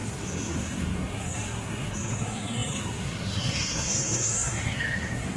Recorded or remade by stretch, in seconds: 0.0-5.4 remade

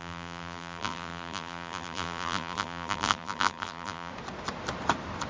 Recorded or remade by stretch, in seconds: 0.0-4.1 remade; 4.1-5.3 recorded

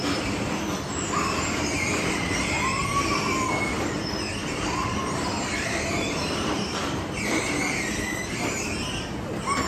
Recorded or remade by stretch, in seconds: 0.0-4.4 recorded; 4.4-7.4 remade; 7.4-9.7 recorded

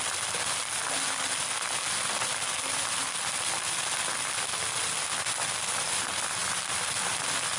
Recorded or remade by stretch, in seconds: 0.0-7.6 recorded

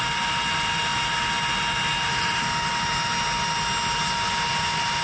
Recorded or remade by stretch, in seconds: 0.0-5.0 recorded

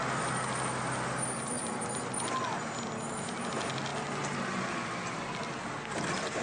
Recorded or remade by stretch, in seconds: 0.0-3.9 recorded; 3.9-5.7 remade; 5.7-6.4 recorded